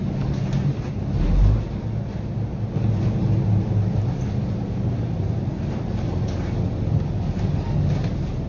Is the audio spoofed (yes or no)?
no